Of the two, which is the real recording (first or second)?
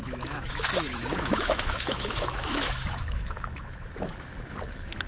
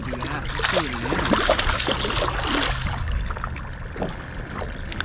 second